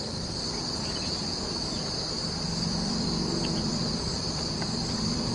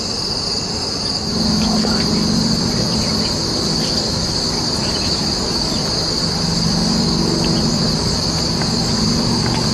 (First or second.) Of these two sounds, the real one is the second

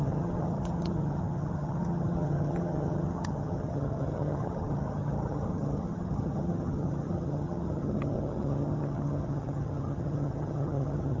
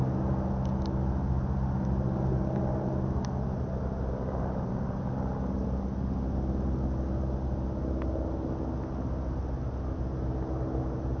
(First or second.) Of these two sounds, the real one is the second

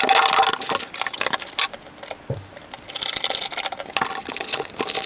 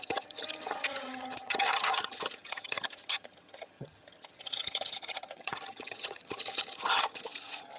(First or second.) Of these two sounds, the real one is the first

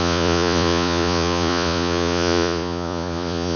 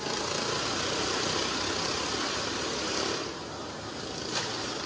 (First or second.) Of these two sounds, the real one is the second